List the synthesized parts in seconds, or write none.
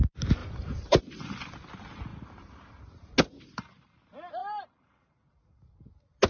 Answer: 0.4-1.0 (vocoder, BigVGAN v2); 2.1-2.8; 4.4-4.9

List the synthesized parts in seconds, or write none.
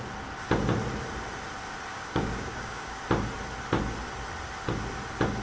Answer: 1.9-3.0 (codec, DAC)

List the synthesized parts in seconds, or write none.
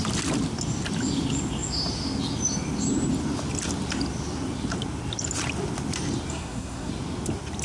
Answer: 6.3-6.9 (codec, SNAC)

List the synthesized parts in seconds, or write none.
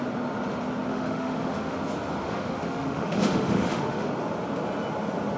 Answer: 0.9-1.8 (autoencoder, DAC-VAE); 2.2-4.1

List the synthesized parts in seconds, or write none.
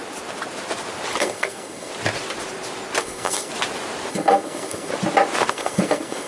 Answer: 1.2-1.9 (codec, SNAC); 3.0-3.5; 4.1-4.9; 5.5-6.3